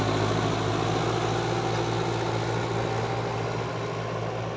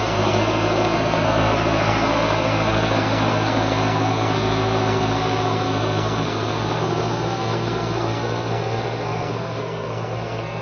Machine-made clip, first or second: second